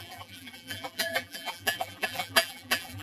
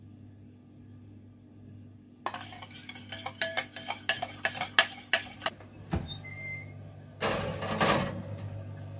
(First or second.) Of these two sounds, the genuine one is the second